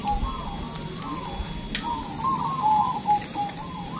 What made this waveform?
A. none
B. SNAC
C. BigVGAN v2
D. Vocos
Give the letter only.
A